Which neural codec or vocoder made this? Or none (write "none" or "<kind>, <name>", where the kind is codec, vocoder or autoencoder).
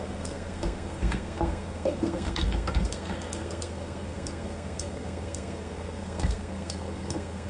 codec, SNAC